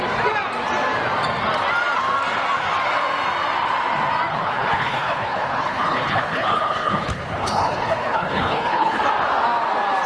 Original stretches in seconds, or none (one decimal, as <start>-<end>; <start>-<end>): 0.0-4.3; 9.0-10.1